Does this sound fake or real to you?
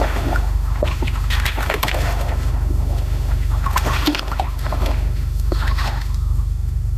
fake